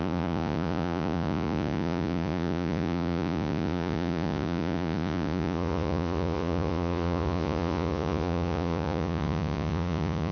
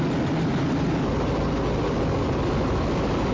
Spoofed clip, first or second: first